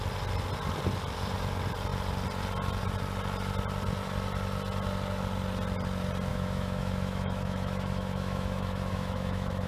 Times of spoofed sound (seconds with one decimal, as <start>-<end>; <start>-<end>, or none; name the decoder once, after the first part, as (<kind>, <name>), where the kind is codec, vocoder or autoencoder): 6.3-9.7 (autoencoder, DAC-VAE)